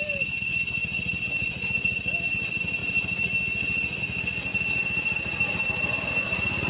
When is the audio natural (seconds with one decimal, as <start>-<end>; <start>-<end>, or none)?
0.0-6.7

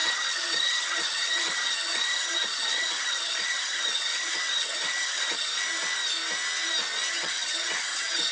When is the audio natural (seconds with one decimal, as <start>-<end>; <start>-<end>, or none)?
5.5-7.1

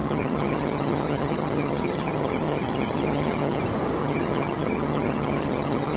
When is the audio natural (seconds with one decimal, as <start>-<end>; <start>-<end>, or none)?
3.6-4.0